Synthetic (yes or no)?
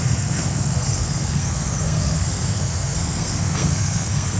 yes